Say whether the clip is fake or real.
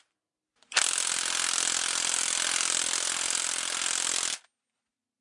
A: real